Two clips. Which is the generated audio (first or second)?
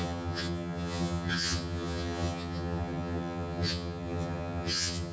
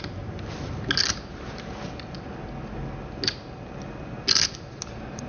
first